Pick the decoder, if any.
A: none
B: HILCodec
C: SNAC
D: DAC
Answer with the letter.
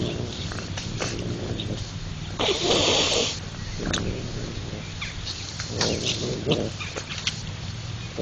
A